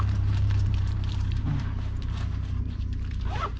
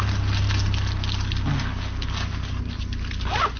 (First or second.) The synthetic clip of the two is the first